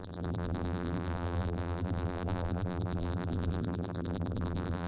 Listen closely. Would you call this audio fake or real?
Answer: fake